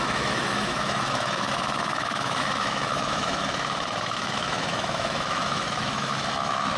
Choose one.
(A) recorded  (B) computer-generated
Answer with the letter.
B